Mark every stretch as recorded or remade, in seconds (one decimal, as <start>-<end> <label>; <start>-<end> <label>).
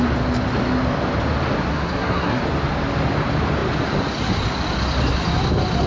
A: 0.0-1.7 recorded; 1.7-2.4 remade; 2.4-5.9 recorded